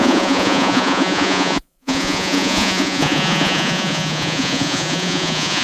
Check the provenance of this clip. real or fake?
fake